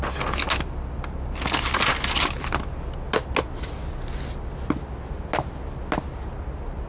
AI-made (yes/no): no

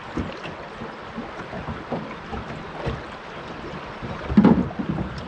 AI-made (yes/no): no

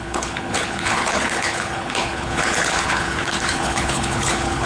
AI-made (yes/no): yes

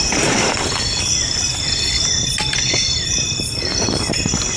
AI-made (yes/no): no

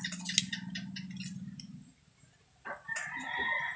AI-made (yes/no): no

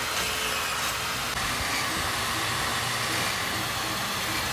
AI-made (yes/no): no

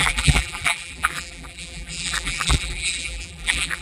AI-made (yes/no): yes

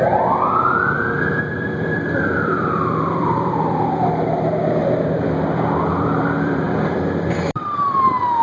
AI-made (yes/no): yes